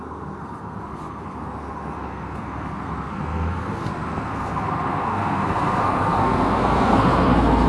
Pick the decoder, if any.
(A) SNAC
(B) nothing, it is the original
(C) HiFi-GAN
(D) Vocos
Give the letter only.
A